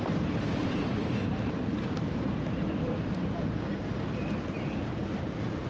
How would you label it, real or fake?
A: fake